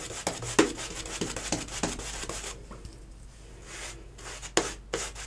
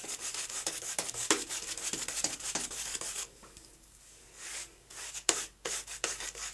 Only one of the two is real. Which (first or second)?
first